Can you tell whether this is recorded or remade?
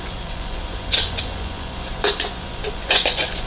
remade